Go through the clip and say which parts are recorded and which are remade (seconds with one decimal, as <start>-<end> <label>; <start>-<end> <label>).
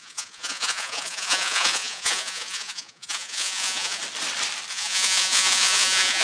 0.0-4.0 remade; 4.0-4.7 recorded; 4.7-6.2 remade